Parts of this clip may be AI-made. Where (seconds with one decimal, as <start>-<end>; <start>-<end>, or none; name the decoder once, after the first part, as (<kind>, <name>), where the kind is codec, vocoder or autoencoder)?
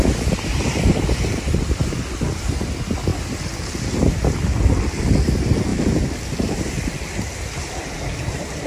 none